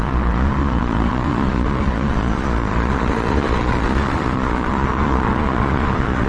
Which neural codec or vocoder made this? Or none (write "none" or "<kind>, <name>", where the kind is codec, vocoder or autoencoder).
vocoder, Vocos